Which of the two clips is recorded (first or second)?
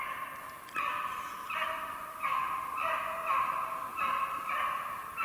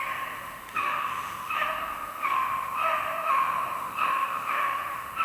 first